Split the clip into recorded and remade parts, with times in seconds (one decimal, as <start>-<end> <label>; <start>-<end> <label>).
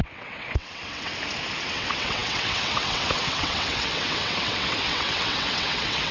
0.0-1.1 remade; 1.1-1.6 recorded; 1.6-6.1 remade